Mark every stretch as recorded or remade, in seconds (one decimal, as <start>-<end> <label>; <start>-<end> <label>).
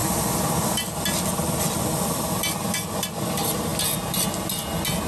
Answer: 0.0-5.1 recorded